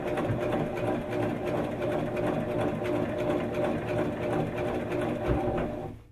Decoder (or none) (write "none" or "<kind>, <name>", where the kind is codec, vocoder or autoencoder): none